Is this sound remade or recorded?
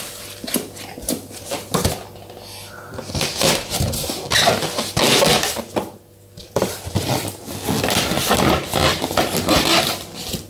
recorded